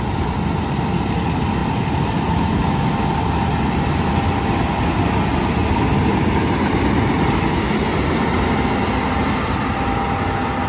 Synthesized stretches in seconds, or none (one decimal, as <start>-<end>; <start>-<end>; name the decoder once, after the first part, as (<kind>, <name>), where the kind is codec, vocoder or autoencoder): none